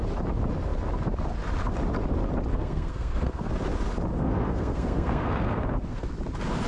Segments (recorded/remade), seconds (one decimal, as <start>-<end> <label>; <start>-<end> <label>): 0.0-2.5 recorded; 2.5-3.5 remade; 3.5-4.1 recorded; 4.1-6.1 remade; 6.1-6.7 recorded